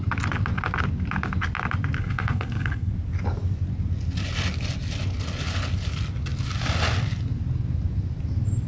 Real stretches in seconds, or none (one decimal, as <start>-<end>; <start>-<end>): 0.0-2.0; 2.9-8.7